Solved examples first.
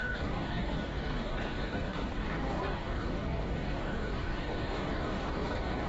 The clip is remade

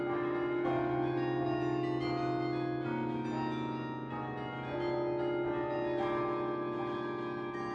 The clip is recorded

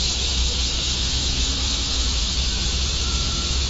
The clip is remade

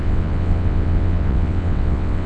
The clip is remade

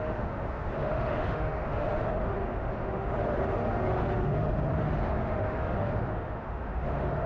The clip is remade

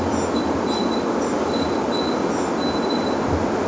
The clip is recorded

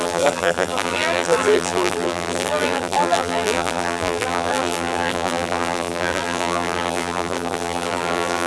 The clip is remade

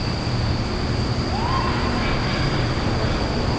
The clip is recorded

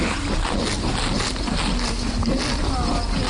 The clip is recorded